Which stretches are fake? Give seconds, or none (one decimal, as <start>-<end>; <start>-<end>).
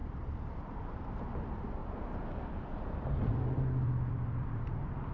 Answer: 0.0-1.2; 1.8-5.1